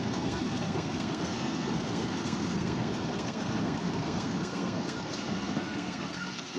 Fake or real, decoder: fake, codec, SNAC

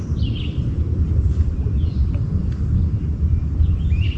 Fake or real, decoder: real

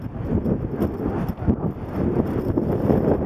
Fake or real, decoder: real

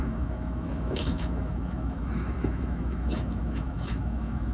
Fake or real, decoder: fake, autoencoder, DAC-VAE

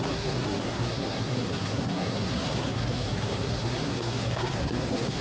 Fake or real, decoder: fake, codec, SNAC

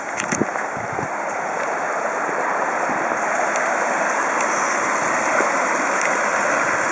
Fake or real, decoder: real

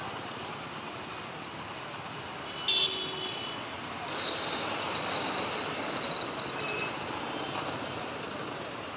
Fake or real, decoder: real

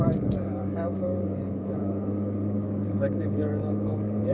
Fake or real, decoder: fake, codec, DAC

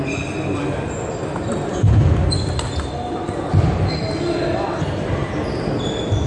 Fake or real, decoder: real